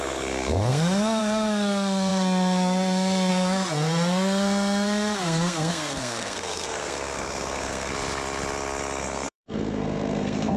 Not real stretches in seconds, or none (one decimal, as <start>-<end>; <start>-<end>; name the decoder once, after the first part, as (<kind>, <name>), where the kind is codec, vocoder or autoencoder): 0.0-7.9 (codec, SNAC); 9.0-10.6